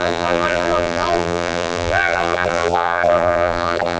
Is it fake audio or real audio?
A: fake